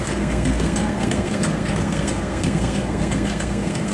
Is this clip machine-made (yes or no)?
yes